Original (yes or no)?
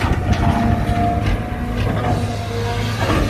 yes